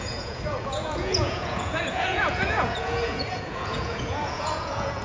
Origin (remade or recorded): remade